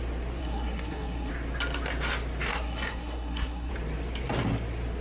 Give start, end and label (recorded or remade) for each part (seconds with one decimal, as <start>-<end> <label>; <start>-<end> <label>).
0.0-0.4 recorded; 0.4-1.3 remade; 1.3-2.5 recorded; 2.5-3.7 remade; 3.7-5.0 recorded